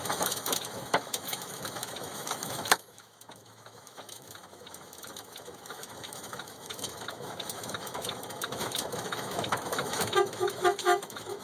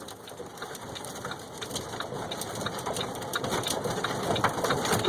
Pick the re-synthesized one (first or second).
first